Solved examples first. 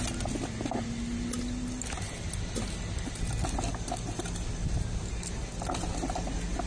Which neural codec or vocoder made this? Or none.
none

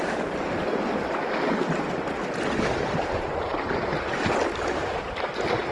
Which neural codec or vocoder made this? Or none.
none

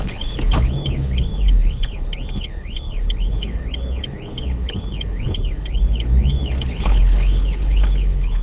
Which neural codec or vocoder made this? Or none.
codec, HILCodec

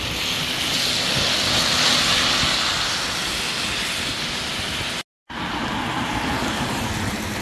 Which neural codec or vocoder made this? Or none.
none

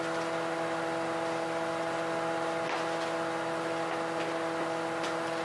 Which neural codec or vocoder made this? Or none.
none